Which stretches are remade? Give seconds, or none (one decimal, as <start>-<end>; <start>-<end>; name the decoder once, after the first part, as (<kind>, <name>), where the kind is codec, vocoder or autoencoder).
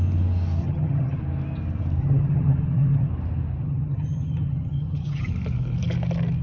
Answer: 0.6-1.2 (vocoder, HiFi-GAN); 2.0-3.1; 3.6-5.3